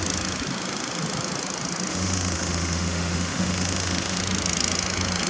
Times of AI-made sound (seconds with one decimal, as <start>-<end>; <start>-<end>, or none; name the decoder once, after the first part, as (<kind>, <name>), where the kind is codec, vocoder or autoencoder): 1.9-4.2 (autoencoder, DAC-VAE)